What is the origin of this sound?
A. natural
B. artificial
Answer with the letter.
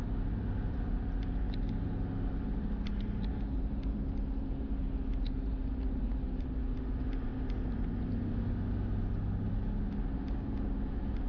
A